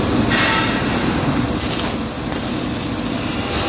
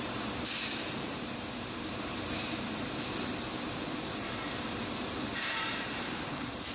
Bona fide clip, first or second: first